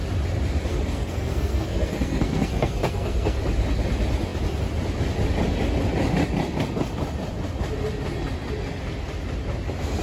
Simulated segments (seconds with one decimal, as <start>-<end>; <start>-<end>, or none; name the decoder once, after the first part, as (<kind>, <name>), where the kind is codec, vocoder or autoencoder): 0.7-3.4 (codec, SNAC)